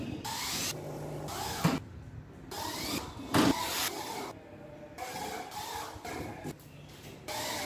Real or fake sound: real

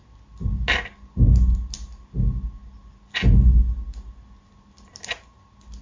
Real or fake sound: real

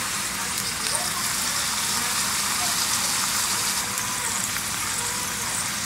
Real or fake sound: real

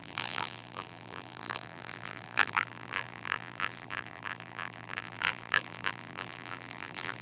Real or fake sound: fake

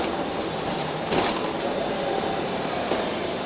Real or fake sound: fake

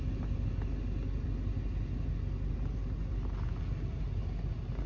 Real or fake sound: real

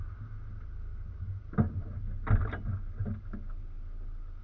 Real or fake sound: real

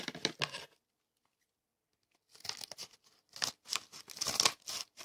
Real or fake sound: real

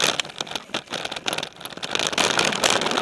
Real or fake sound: real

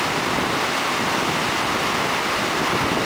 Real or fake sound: real